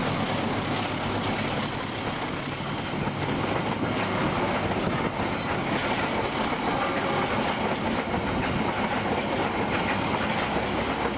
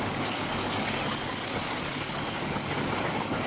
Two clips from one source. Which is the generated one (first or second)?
second